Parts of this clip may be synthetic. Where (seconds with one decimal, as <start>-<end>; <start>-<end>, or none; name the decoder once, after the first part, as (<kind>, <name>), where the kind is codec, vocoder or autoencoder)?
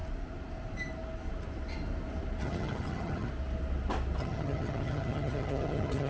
2.4-3.3 (vocoder, HiFi-GAN); 4.2-6.1